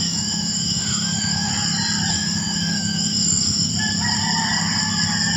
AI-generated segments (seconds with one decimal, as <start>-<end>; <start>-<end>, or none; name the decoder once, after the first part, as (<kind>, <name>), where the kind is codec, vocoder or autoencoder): 0.0-1.5 (autoencoder, DAC-VAE); 2.1-3.7